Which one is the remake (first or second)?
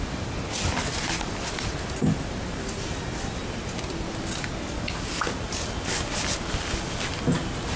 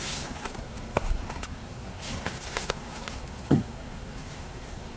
second